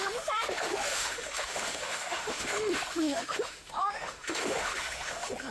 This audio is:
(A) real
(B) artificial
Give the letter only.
B